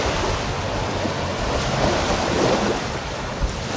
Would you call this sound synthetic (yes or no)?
no